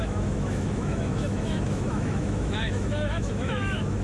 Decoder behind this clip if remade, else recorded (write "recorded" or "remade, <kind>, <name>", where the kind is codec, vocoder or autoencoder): remade, autoencoder, DAC-VAE